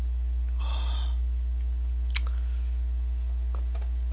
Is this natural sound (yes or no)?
yes